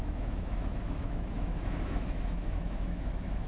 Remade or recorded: remade